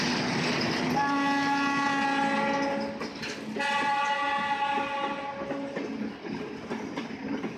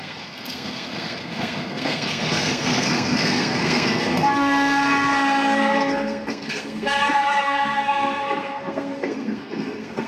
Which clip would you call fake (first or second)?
second